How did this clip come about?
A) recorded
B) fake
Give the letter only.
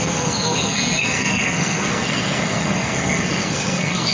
B